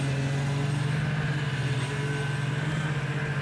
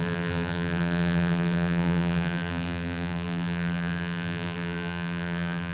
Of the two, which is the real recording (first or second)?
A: first